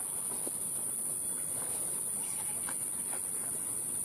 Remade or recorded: recorded